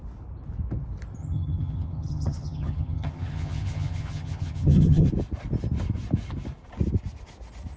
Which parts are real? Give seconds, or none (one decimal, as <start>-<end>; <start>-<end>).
0.0-1.2; 5.1-7.8